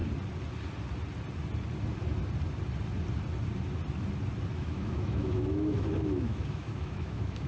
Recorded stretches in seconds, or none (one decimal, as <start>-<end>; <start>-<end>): 0.0-4.5